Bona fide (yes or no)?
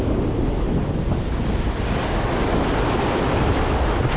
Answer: yes